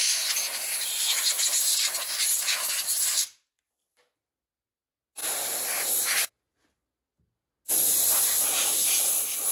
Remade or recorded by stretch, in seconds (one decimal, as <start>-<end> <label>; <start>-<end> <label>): 0.0-9.5 recorded